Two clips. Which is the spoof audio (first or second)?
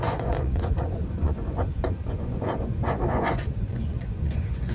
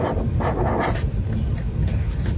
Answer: first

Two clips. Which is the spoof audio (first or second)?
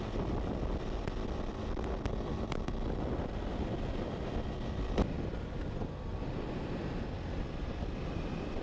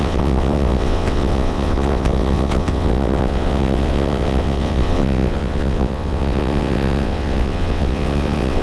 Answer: second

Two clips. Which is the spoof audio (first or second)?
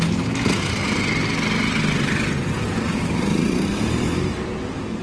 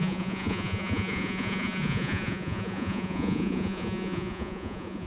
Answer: second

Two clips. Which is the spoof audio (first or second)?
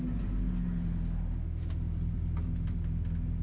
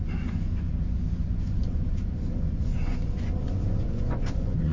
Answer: second